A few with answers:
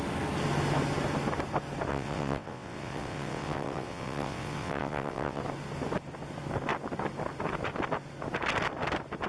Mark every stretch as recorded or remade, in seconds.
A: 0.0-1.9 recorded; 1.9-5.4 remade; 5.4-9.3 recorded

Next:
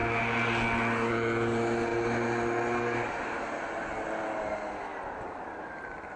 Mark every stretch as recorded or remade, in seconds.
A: 0.0-6.2 recorded

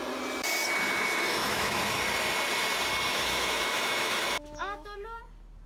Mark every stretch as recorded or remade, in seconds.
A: 0.0-1.4 recorded; 1.4-2.0 remade; 2.0-3.1 recorded; 3.1-5.2 remade; 5.2-5.7 recorded

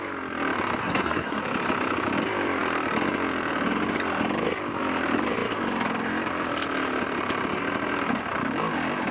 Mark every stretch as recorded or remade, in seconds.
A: 0.0-0.8 recorded; 0.8-1.4 remade; 1.4-9.1 recorded

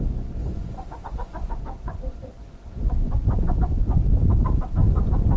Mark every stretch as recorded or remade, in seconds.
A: 0.0-4.0 remade; 4.0-5.4 recorded

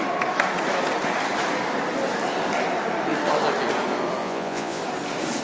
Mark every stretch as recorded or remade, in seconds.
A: 0.0-4.2 recorded; 4.2-4.8 remade; 4.8-5.4 recorded

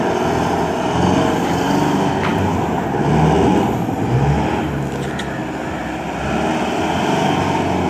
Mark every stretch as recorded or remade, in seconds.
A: 0.0-7.9 recorded